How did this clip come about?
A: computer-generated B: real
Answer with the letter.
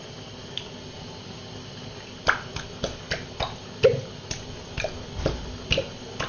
B